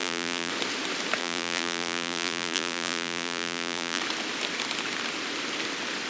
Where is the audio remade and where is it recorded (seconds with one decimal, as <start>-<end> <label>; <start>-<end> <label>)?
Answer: 0.0-0.5 remade; 0.5-1.2 recorded; 1.2-4.0 remade; 4.0-6.1 recorded

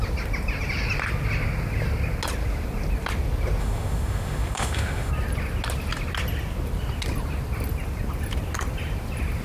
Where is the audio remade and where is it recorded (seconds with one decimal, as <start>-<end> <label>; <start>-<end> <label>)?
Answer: 0.0-3.6 recorded; 3.6-5.1 remade; 5.1-9.4 recorded

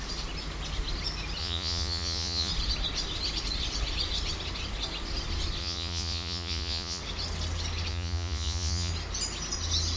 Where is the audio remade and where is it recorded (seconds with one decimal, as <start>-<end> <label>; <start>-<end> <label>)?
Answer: 0.0-1.4 recorded; 1.4-2.5 remade; 2.5-5.6 recorded; 5.6-7.0 remade; 7.0-7.9 recorded; 7.9-8.9 remade; 8.9-10.0 recorded

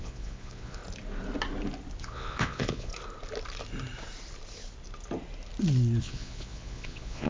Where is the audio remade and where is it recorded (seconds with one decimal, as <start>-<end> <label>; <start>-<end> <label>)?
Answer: 0.0-0.8 remade; 0.8-2.0 recorded; 2.0-2.9 remade; 2.9-6.0 recorded; 6.0-7.3 remade

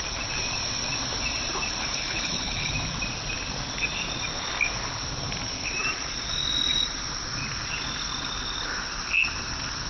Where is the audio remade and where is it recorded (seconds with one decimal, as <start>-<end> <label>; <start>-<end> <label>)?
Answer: 0.0-1.8 recorded; 1.8-2.7 remade; 2.7-9.9 recorded

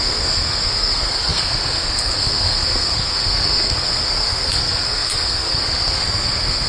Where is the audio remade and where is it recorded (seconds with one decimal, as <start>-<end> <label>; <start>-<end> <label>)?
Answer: 0.0-6.7 remade